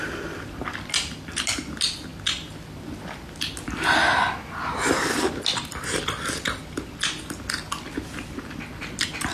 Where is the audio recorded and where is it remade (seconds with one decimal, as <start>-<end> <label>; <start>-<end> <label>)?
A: 0.0-9.3 recorded